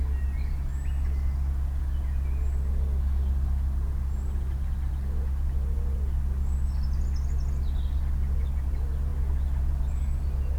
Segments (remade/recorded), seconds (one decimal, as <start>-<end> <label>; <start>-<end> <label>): 0.0-10.6 recorded